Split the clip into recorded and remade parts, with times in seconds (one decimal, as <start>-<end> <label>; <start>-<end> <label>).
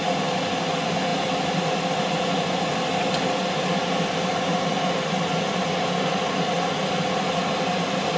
0.0-8.2 recorded